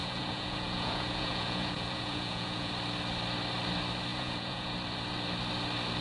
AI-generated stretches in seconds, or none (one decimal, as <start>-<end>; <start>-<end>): 0.0-2.7; 4.1-4.7